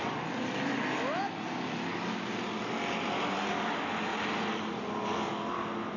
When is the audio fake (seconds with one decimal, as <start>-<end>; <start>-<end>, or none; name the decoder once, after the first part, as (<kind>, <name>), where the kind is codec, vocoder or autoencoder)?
none